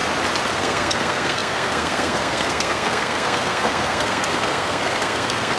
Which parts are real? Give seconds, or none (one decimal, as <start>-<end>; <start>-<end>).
0.0-0.5